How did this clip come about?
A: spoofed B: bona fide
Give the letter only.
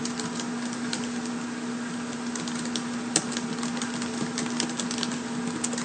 B